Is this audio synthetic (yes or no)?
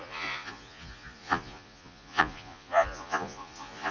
yes